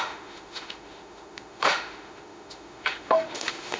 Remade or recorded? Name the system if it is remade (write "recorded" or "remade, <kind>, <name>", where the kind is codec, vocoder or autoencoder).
remade, autoencoder, DAC-VAE